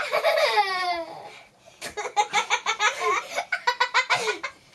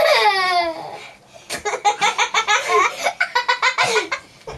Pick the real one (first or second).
second